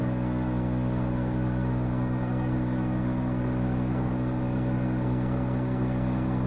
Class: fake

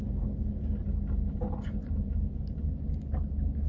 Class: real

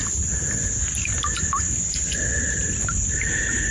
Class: real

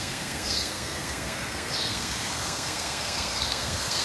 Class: fake